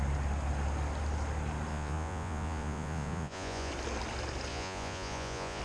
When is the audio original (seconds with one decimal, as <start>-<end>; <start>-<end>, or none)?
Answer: 0.0-1.7; 3.7-4.5